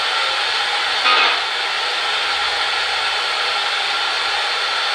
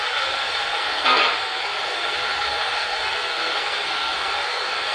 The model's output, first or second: second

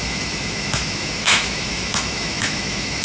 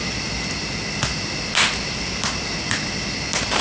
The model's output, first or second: first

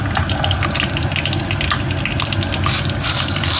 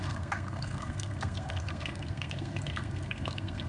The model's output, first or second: second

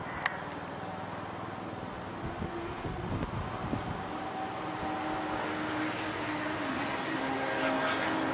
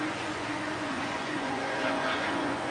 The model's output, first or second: second